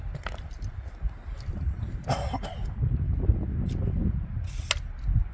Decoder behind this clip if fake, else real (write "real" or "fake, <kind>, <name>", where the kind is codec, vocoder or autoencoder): real